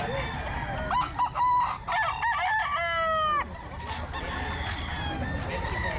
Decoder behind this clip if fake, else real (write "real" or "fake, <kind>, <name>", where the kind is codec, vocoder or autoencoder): real